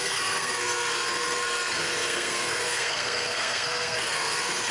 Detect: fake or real fake